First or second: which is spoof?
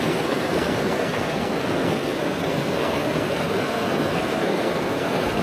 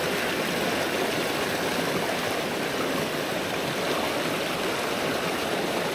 first